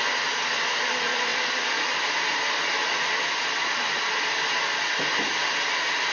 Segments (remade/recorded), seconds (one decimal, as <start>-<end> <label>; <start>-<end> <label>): 0.0-6.1 recorded